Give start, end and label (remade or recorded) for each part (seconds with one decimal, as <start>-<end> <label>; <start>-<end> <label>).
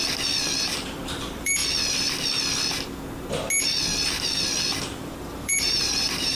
0.0-0.6 recorded; 0.6-1.6 remade; 1.6-4.9 recorded; 4.9-6.3 remade